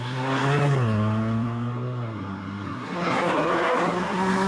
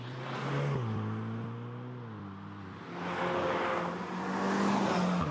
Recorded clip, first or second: second